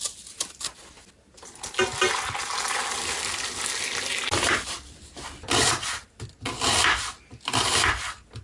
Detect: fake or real real